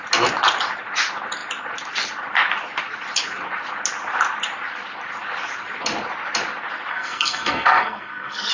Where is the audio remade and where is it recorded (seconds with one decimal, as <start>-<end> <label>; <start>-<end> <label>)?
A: 0.0-6.9 recorded; 6.9-8.5 remade